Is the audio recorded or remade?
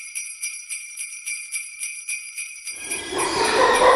remade